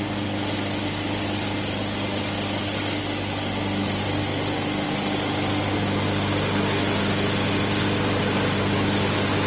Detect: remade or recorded recorded